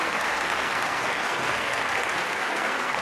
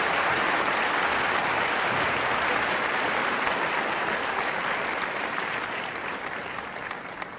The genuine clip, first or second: second